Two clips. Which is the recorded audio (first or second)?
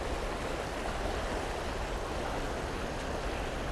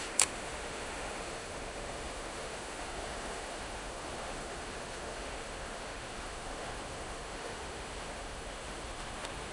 first